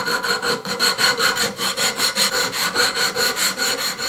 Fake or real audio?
fake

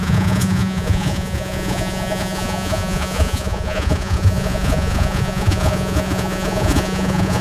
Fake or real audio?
fake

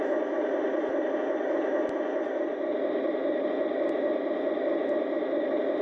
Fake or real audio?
real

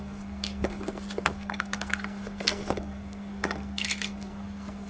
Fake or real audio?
fake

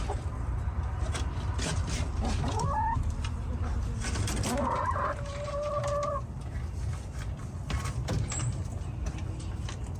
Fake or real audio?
real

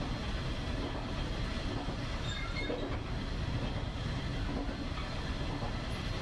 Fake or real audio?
real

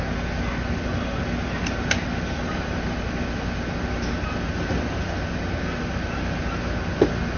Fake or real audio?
real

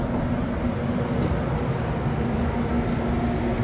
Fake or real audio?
real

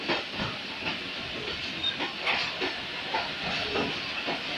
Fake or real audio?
real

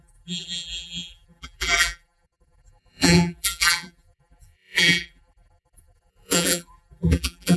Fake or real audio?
fake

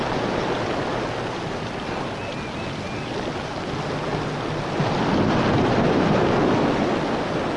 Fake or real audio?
real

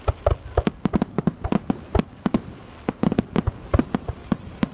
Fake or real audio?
real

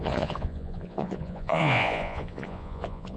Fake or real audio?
fake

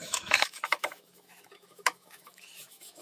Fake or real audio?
fake